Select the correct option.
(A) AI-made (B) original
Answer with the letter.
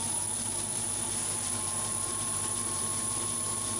A